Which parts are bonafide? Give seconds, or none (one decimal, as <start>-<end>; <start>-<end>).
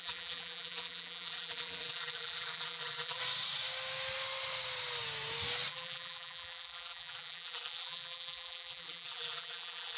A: 3.2-5.7